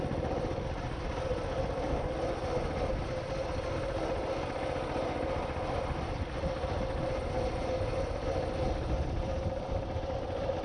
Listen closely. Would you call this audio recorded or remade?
recorded